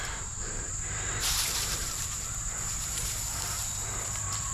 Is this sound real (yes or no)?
no